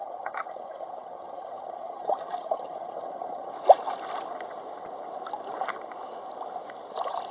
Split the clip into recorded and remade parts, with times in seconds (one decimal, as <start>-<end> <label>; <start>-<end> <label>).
0.0-3.5 remade; 3.5-7.3 recorded